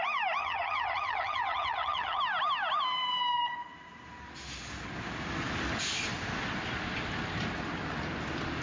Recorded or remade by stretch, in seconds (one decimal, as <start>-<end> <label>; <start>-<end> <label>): 0.0-0.4 recorded; 0.4-2.2 remade; 2.2-8.6 recorded